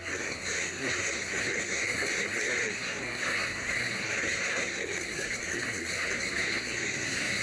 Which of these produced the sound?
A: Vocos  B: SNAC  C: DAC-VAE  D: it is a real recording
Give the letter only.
B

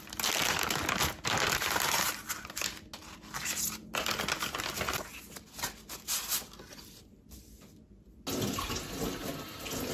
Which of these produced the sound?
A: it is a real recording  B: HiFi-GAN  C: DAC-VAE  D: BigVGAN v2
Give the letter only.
A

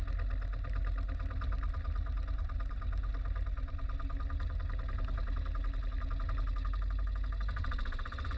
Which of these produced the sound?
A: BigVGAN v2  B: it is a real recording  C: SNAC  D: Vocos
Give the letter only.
B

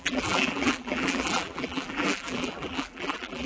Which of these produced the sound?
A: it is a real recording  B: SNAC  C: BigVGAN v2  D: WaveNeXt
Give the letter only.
C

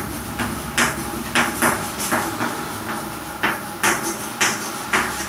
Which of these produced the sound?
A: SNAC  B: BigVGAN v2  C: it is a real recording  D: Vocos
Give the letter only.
C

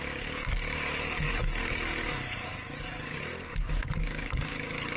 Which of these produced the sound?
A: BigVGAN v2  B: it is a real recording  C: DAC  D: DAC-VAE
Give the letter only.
C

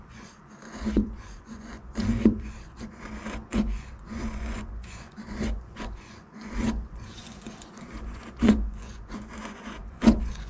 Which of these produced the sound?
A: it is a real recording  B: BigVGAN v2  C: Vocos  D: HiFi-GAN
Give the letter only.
C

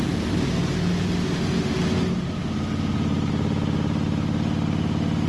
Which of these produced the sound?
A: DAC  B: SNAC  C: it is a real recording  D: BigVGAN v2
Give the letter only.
C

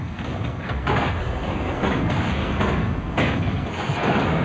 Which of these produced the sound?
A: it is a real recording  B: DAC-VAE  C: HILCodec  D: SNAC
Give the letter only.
D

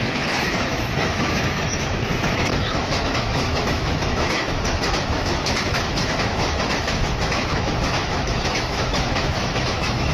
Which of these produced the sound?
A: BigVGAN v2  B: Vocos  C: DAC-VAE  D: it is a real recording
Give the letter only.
C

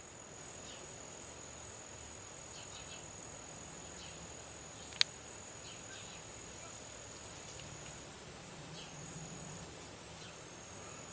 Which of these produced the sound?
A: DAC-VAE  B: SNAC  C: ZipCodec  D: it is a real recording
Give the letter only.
D